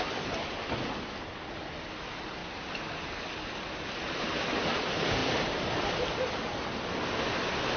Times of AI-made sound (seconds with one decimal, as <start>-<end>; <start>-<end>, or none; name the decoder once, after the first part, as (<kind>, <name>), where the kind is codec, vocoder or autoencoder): 5.2-6.0 (vocoder, BigVGAN v2)